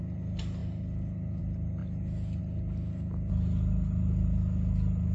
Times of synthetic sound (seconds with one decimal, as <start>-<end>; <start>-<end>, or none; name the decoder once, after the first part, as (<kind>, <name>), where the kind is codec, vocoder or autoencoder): none